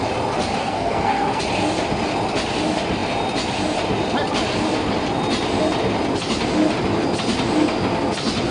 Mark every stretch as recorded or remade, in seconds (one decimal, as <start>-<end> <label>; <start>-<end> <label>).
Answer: 0.0-0.6 recorded; 0.6-1.4 remade; 1.4-8.5 recorded